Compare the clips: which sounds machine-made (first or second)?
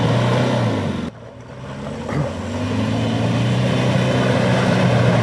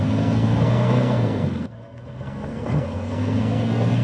second